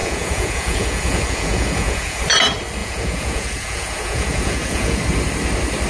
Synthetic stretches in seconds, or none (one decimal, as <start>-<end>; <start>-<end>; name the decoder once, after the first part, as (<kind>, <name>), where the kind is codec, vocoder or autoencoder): 0.0-2.2 (vocoder, Vocos); 2.8-5.0